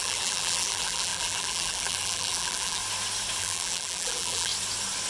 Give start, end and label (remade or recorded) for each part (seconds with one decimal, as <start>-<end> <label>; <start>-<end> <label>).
0.0-2.8 remade; 2.8-3.4 recorded; 3.4-4.5 remade; 4.5-5.1 recorded